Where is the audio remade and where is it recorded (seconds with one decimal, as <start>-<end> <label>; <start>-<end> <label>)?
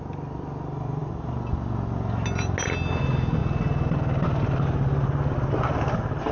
0.0-6.3 recorded